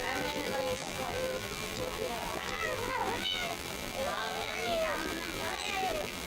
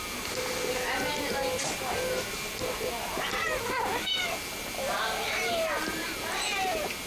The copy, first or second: first